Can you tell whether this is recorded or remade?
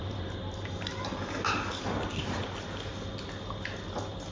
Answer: recorded